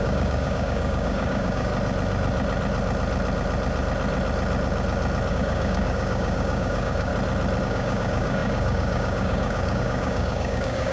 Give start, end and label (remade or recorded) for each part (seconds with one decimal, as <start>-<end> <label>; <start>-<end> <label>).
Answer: 0.0-1.7 remade; 1.7-5.3 recorded; 5.3-7.1 remade; 7.1-7.6 recorded; 7.6-10.9 remade